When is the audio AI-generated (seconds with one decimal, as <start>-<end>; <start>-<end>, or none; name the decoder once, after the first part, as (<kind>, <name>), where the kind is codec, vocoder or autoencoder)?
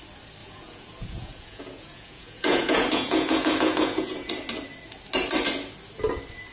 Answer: 0.4-4.3 (vocoder, Vocos)